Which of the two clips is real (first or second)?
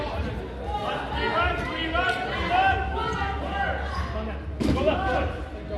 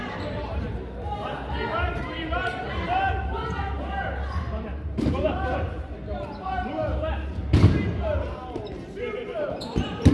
first